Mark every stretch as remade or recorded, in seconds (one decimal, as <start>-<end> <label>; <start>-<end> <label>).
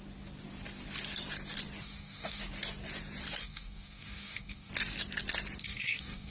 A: 0.0-1.8 recorded; 1.8-2.4 remade; 2.4-3.4 recorded; 3.4-4.7 remade; 4.7-5.6 recorded; 5.6-6.3 remade